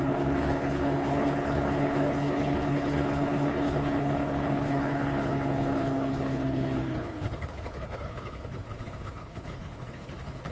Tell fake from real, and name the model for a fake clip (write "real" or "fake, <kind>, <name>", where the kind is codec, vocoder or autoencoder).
fake, codec, HILCodec